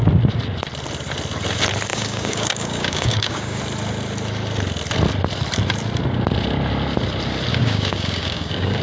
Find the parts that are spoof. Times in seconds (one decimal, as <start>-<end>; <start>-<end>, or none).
1.9-3.6; 7.5-8.8